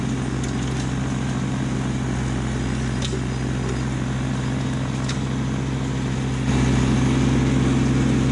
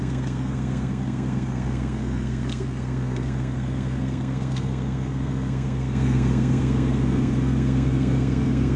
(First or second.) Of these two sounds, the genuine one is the first